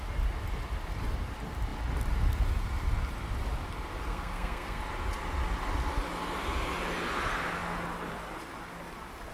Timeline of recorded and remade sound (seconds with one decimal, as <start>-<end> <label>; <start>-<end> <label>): 0.0-4.1 recorded; 4.1-4.8 remade; 4.8-9.3 recorded